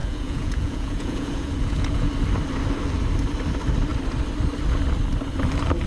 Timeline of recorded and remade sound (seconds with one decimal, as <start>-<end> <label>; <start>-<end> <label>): 0.0-2.1 remade; 2.1-5.9 recorded